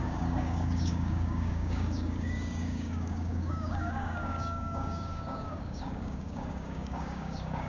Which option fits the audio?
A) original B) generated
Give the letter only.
B